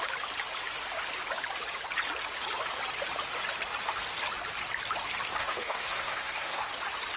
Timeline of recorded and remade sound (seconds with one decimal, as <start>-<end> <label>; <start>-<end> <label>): 0.0-5.4 recorded; 5.4-6.7 remade; 6.7-7.2 recorded